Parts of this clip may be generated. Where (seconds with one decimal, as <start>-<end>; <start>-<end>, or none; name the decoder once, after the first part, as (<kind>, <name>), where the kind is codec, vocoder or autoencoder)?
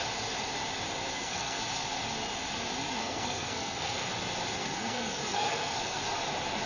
1.1-1.6 (codec, SNAC); 3.0-4.1; 4.6-6.0